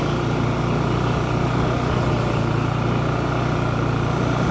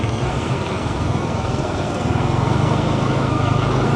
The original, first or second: first